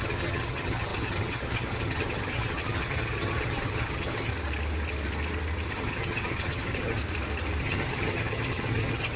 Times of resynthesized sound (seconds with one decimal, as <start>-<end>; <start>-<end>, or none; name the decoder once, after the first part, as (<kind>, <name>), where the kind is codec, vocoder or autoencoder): 0.0-4.3 (vocoder, HiFi-GAN); 5.7-7.0; 7.6-9.2